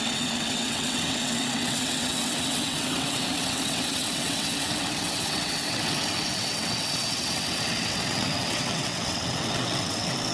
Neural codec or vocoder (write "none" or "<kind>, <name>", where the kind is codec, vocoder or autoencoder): vocoder, WaveNeXt